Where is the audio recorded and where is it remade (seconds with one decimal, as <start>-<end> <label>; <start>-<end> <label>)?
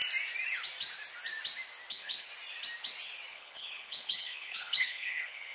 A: 0.0-1.9 recorded; 1.9-2.3 remade; 2.3-3.3 recorded; 3.3-5.5 remade